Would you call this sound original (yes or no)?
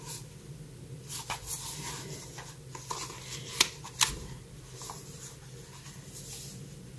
yes